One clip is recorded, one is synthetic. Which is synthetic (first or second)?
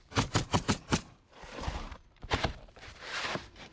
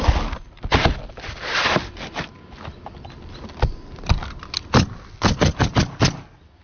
first